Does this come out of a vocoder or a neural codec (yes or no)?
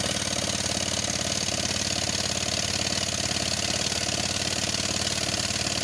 no